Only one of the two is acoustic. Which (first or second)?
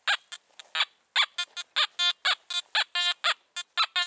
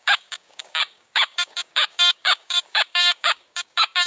first